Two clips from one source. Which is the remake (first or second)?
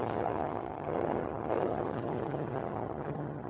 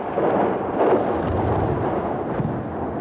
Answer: first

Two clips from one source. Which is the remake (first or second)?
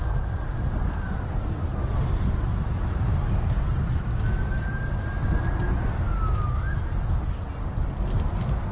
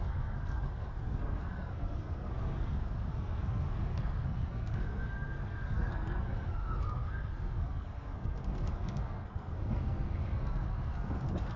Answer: second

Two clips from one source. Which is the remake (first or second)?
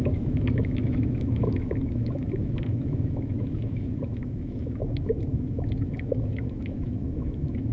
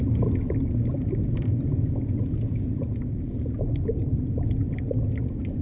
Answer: first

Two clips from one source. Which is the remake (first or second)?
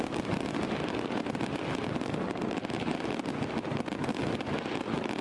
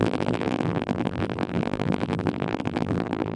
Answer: second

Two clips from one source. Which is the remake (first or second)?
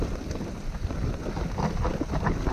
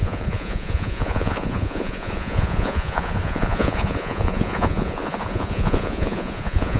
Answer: second